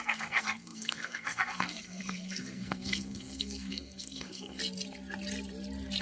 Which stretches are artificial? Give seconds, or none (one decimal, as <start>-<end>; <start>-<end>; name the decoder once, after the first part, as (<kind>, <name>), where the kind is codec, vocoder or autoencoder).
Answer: 0.0-4.6 (codec, SNAC)

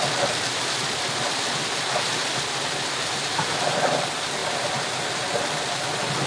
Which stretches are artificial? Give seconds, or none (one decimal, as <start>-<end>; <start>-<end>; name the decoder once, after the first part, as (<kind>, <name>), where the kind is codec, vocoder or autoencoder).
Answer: none

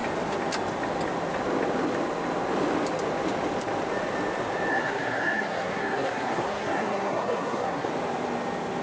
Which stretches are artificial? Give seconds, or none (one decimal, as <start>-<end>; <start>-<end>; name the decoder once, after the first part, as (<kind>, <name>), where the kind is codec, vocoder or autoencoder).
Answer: 4.7-7.9 (codec, SNAC)

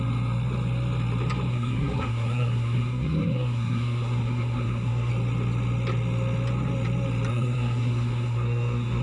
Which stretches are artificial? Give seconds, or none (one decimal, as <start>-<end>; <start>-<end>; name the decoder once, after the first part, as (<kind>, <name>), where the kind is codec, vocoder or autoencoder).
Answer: 1.5-5.1 (codec, SNAC); 7.3-9.0

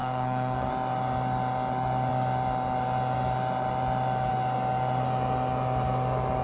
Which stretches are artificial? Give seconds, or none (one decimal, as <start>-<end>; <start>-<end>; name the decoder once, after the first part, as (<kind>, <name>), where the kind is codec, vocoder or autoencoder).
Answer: 0.0-0.7 (codec, SNAC)

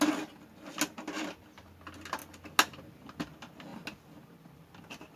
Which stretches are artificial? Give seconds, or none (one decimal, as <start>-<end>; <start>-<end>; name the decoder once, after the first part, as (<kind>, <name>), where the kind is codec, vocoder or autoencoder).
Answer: none